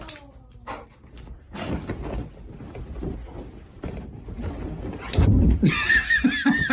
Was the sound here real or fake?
real